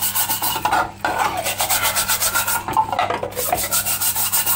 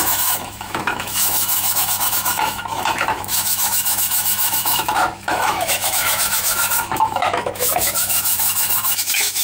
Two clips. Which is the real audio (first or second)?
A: first